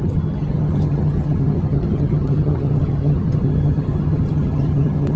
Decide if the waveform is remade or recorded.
remade